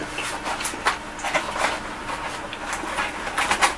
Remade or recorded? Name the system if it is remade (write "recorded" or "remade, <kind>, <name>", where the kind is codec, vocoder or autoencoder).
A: recorded